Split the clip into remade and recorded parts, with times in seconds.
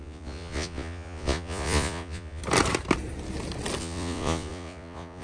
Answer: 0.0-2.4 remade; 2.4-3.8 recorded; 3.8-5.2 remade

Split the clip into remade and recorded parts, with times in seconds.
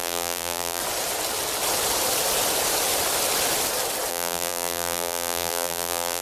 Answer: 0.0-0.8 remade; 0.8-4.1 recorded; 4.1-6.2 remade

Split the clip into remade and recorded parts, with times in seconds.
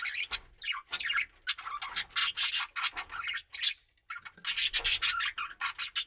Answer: 0.0-6.1 recorded